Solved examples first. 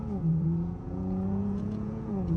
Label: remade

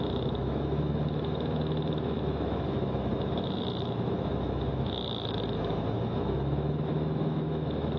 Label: remade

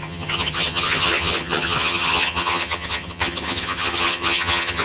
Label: remade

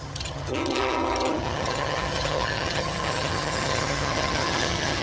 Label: remade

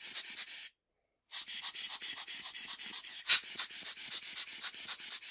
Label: recorded